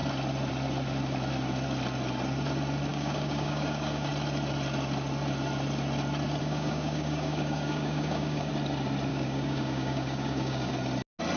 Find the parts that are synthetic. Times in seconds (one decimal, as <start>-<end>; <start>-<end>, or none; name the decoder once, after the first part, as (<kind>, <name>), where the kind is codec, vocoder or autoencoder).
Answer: 2.9-4.1 (codec, DAC); 6.4-8.5; 9.1-10.7